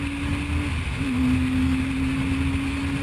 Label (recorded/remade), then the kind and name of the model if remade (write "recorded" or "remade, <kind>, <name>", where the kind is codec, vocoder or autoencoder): recorded